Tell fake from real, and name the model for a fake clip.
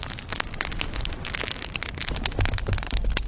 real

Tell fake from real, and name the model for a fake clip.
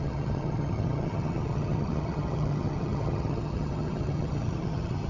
fake, vocoder, HiFi-GAN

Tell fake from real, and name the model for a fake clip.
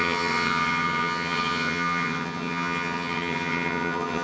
fake, vocoder, HiFi-GAN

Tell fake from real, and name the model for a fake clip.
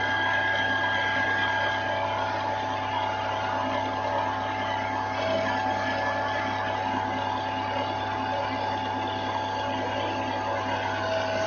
real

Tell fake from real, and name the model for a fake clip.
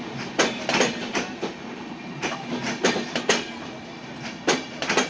real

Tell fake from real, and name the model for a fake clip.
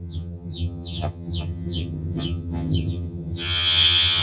fake, vocoder, HiFi-GAN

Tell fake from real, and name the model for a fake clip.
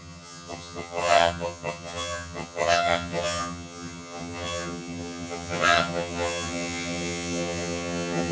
fake, vocoder, HiFi-GAN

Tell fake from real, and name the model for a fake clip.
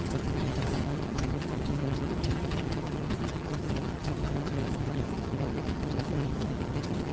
fake, vocoder, HiFi-GAN